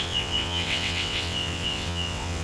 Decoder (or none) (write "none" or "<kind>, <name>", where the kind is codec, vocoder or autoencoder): vocoder, WaveNeXt